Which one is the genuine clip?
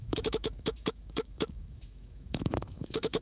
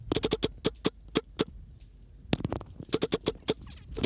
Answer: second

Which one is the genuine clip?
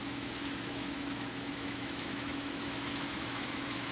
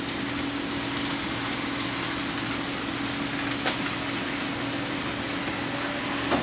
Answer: second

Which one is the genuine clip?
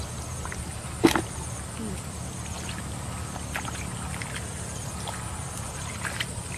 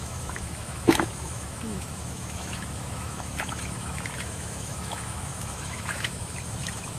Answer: first